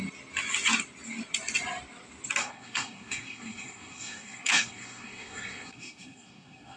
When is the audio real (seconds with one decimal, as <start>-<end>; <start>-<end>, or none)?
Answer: 0.0-2.4